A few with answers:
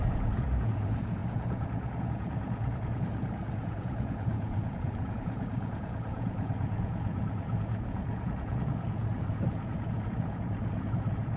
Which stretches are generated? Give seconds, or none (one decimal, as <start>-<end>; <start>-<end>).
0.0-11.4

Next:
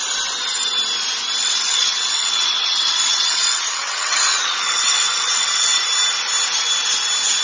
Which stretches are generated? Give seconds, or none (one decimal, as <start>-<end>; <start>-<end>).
1.4-5.8

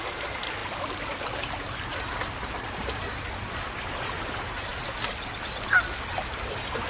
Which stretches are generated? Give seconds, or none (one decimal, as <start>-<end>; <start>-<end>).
none